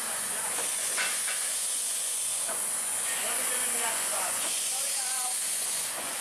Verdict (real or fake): fake